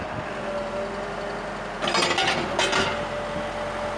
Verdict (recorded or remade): recorded